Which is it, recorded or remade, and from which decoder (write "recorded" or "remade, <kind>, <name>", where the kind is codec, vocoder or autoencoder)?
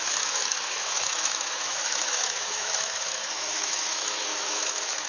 remade, autoencoder, DAC-VAE